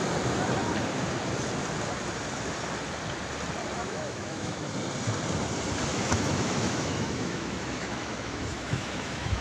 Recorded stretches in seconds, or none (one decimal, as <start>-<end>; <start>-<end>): 0.0-3.8; 4.7-5.9

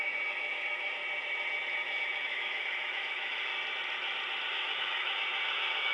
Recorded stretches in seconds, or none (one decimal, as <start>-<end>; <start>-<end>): 1.0-1.7; 3.5-4.5